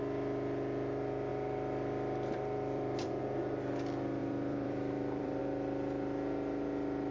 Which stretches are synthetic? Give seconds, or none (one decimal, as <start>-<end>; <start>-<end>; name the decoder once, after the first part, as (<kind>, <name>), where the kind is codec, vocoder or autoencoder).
1.3-3.2 (vocoder, BigVGAN v2); 4.2-5.4